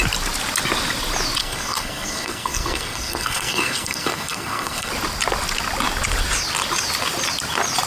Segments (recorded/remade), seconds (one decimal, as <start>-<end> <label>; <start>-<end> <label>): 0.0-1.4 recorded; 1.4-4.9 remade; 4.9-7.9 recorded